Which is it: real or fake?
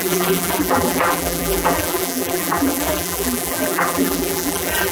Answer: fake